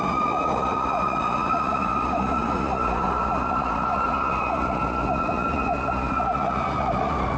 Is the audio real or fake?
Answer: fake